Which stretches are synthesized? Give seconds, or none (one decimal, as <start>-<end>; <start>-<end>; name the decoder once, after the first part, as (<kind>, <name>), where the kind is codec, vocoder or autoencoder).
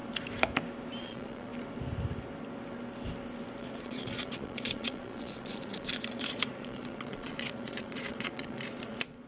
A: 1.0-1.5 (vocoder, Vocos); 3.6-9.3